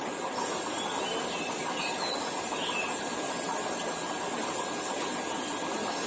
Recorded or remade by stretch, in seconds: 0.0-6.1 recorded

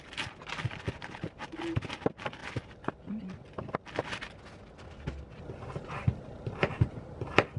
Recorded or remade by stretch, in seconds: 0.0-7.6 recorded

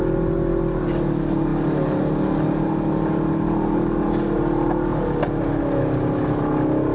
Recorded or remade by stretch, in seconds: 0.0-6.9 recorded